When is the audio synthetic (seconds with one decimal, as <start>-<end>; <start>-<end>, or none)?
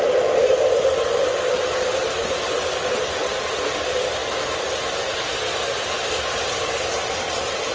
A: none